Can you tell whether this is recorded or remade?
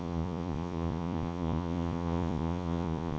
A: remade